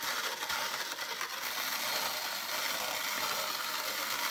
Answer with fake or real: real